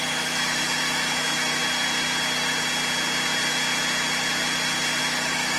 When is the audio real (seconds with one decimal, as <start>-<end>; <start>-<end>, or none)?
1.6-5.0